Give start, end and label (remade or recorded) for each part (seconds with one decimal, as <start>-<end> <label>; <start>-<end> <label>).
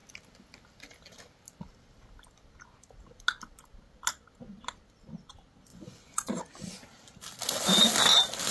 0.0-5.7 recorded; 5.7-6.3 remade; 6.3-8.5 recorded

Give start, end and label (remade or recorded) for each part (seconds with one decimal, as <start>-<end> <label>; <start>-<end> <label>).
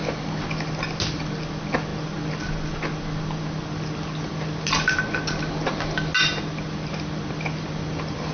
0.0-8.3 recorded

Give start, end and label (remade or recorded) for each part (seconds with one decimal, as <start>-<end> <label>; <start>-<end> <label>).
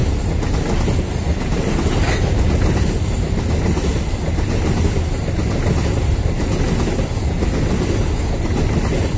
0.0-9.2 recorded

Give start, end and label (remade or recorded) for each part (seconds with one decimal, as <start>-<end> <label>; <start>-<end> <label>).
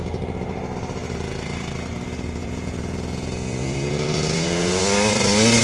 0.0-2.4 recorded; 2.4-4.8 remade; 4.8-5.6 recorded